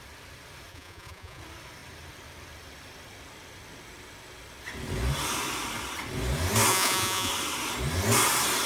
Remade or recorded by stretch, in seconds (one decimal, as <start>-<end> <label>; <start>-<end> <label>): 0.0-0.7 recorded; 0.7-1.4 remade; 1.4-6.7 recorded; 6.7-7.3 remade; 7.3-8.7 recorded